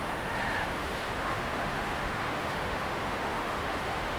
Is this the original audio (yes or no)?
no